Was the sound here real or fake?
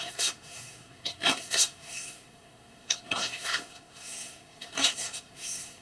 fake